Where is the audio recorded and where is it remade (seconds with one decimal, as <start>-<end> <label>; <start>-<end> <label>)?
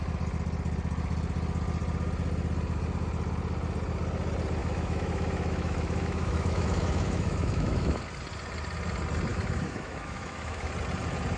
0.0-4.6 recorded; 4.6-8.0 remade; 8.0-9.3 recorded; 9.3-10.7 remade; 10.7-11.4 recorded